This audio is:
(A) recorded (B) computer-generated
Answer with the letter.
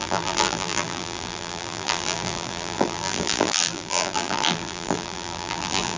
B